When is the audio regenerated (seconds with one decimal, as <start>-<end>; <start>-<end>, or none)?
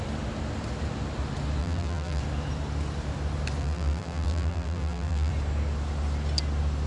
1.6-2.2; 3.6-5.3